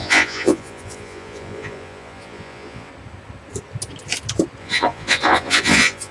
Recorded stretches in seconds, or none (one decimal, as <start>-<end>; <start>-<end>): 2.9-4.6